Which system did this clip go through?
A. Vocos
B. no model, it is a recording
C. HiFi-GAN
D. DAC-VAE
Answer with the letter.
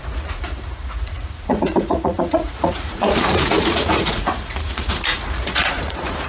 A